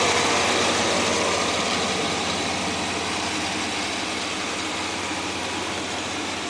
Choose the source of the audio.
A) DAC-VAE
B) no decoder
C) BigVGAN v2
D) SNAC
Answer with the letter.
B